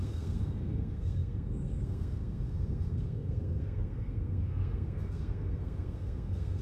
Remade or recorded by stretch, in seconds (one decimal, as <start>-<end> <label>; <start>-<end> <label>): 0.0-6.6 remade